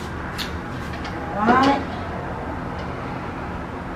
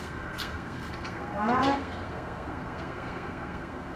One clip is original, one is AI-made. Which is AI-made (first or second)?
second